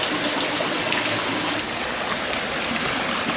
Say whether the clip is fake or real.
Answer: real